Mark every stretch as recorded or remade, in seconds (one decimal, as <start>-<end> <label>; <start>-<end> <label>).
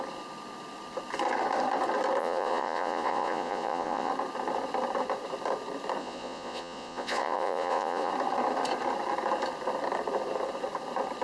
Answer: 0.0-2.2 recorded; 2.2-4.1 remade; 4.1-6.0 recorded; 6.0-8.1 remade; 8.1-11.2 recorded